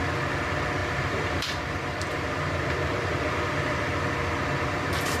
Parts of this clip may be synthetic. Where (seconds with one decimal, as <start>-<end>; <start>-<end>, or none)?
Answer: 0.8-3.9